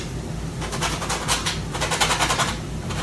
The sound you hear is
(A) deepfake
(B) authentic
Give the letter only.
B